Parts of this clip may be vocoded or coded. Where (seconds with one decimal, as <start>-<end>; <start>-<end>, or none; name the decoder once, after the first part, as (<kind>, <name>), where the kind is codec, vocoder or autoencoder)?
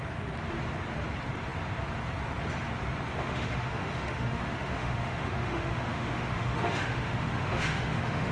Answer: 3.1-8.3 (autoencoder, DAC-VAE)